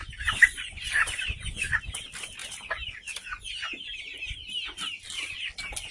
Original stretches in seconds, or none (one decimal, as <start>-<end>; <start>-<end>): 1.8-5.9